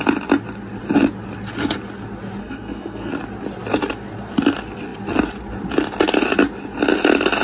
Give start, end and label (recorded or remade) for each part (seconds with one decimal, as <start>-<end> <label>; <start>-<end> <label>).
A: 0.0-2.4 recorded; 2.4-3.1 remade; 3.1-7.4 recorded